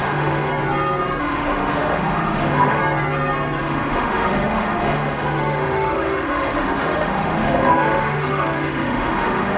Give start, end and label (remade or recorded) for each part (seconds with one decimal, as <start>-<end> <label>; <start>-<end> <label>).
0.0-0.5 remade; 0.5-1.2 recorded; 1.2-2.8 remade; 2.8-3.6 recorded; 3.6-9.6 remade